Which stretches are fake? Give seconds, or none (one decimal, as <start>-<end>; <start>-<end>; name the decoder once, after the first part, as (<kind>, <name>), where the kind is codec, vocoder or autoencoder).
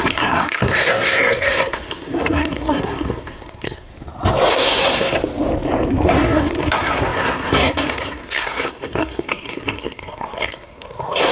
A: 0.0-3.9 (codec, SNAC); 4.5-5.2; 5.9-11.3